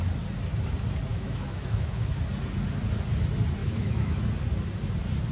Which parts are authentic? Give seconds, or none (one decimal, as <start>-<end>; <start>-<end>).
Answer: 0.0-1.1; 2.1-3.6; 4.2-5.3